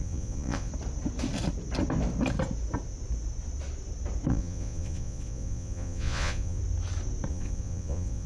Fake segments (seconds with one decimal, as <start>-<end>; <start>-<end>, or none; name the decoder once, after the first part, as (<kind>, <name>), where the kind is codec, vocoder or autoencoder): 0.0-0.7 (vocoder, Vocos); 4.3-6.6; 7.3-8.3